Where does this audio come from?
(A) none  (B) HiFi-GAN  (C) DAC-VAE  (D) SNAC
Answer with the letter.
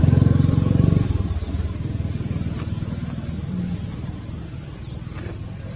A